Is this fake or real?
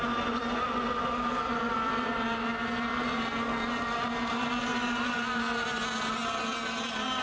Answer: real